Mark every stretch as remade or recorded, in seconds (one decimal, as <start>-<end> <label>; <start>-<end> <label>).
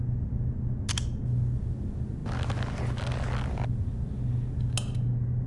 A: 0.0-5.5 recorded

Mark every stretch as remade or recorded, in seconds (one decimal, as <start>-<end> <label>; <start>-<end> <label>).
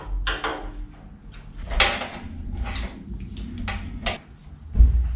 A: 0.0-5.2 recorded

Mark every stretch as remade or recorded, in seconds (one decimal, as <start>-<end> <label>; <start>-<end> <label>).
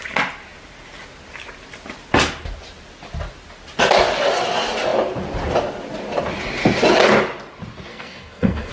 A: 0.0-7.9 recorded; 7.9-8.7 remade